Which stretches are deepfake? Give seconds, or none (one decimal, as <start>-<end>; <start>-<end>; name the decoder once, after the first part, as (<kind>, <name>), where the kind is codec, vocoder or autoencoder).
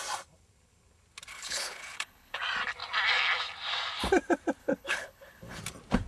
1.3-2.4 (codec, HILCodec); 4.6-5.6